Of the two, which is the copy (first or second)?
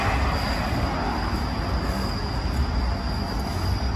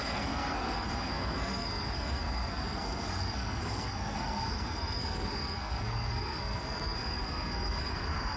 second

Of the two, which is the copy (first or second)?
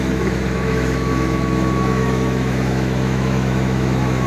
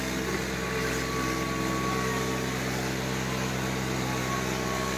first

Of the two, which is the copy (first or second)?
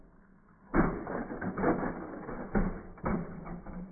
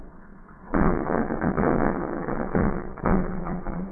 second